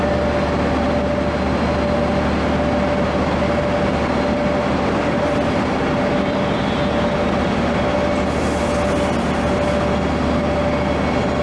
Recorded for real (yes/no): yes